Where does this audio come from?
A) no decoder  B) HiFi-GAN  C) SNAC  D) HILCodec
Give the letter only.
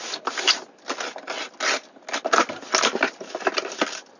A